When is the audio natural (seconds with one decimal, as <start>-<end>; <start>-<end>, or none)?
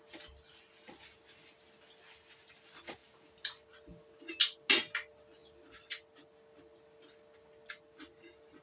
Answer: 0.0-8.6